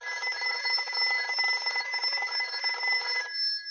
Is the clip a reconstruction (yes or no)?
yes